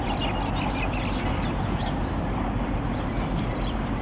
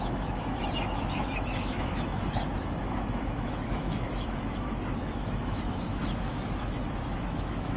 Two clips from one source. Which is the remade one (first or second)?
second